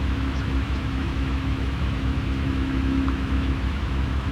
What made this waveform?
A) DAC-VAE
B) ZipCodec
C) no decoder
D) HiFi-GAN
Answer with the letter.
A